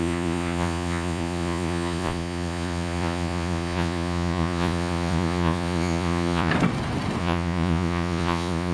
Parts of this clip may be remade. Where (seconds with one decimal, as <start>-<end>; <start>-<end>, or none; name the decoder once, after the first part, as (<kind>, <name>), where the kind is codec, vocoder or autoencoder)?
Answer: 0.0-6.5 (vocoder, Vocos); 7.2-8.7